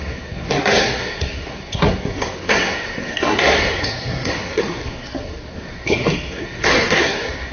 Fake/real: fake